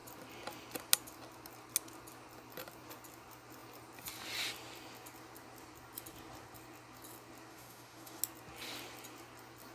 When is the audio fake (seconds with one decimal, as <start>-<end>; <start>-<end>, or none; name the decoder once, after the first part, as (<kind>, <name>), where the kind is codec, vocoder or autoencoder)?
7.5-8.2 (autoencoder, DAC-VAE)